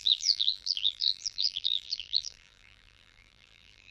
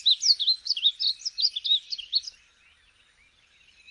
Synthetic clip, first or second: first